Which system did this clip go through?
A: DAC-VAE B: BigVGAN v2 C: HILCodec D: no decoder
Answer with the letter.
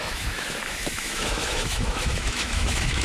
A